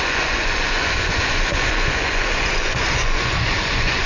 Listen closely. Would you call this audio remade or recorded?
remade